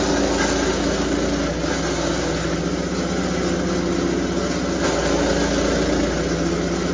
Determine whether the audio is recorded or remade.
recorded